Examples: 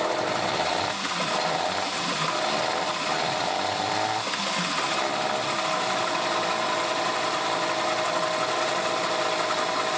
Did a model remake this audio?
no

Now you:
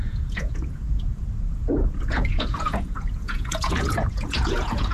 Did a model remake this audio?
yes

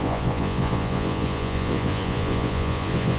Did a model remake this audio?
yes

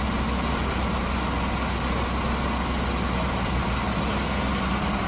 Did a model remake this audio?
no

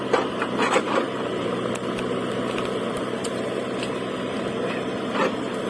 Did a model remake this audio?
no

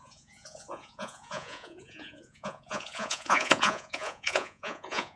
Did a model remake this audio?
yes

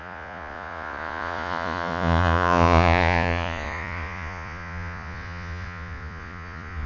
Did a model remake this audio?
yes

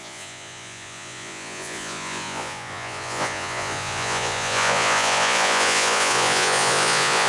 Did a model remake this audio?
yes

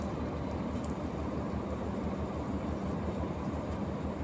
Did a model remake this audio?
no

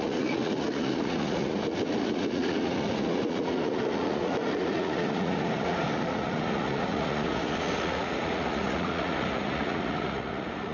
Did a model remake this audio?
yes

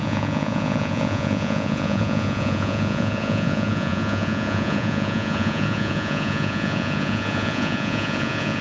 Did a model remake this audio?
yes